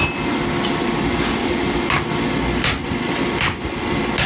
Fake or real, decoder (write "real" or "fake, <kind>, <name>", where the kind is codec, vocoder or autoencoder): real